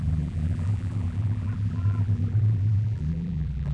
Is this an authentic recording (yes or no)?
no